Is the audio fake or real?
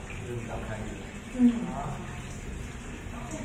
real